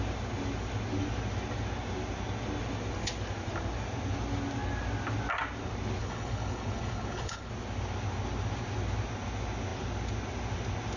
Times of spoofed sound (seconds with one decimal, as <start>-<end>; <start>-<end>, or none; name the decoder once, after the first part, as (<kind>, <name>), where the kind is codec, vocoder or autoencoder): 6.0-7.5 (codec, HILCodec)